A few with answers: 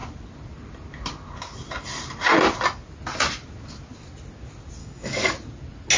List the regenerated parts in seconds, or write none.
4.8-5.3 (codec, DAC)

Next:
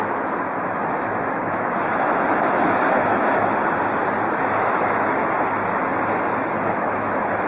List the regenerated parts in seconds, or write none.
0.0-3.6 (autoencoder, DAC-VAE); 4.4-5.2; 6.5-7.5

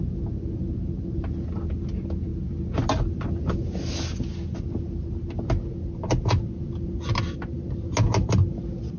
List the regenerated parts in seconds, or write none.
none

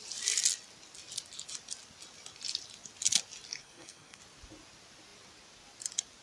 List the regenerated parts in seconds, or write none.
3.6-4.2 (codec, SNAC)

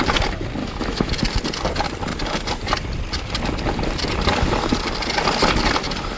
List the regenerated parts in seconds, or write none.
0.6-1.1 (autoencoder, DAC-VAE)

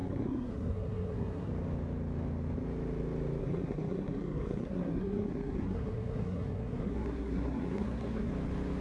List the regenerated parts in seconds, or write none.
0.0-1.5 (codec, SNAC); 3.4-8.3